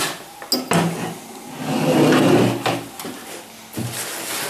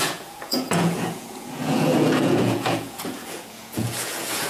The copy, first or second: second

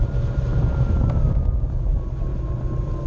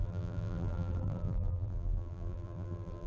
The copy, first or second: second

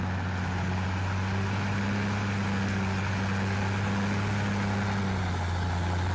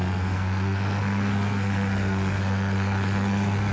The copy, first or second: second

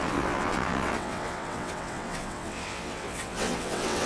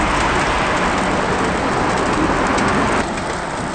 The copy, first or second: first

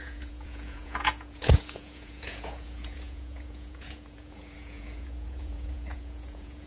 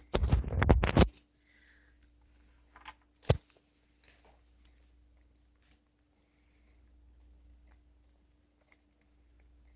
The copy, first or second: first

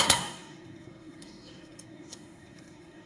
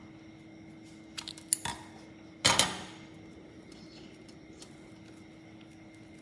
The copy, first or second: first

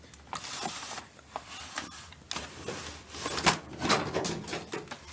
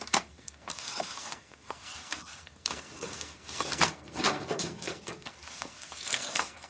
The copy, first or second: second